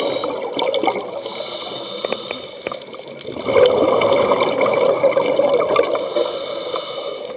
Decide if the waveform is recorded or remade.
recorded